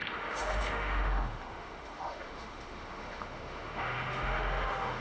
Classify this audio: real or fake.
fake